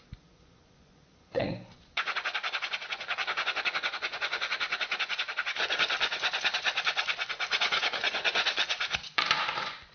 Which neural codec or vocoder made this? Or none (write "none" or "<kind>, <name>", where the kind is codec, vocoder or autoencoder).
vocoder, Vocos